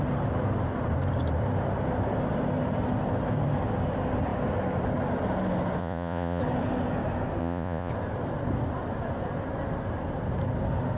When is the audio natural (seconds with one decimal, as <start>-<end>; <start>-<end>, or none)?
0.0-5.8; 6.4-7.4; 7.9-11.0